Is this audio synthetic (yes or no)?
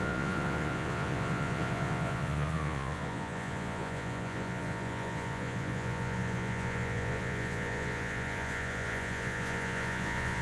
yes